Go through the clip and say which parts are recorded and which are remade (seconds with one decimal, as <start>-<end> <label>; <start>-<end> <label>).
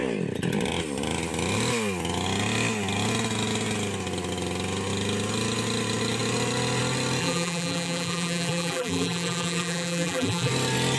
0.0-7.2 recorded; 7.2-10.5 remade; 10.5-11.0 recorded